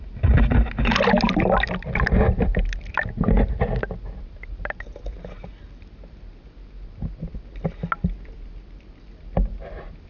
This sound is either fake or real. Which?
real